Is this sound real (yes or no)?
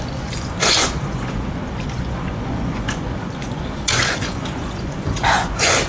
no